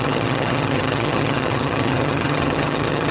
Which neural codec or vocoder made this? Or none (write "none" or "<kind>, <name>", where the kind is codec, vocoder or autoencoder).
vocoder, HiFi-GAN